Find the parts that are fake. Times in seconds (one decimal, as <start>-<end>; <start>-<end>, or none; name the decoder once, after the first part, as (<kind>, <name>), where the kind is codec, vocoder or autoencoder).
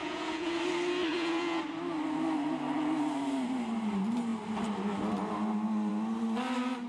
0.0-0.6 (vocoder, Vocos); 1.1-1.6